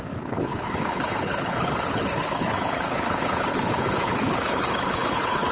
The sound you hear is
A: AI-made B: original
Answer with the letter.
A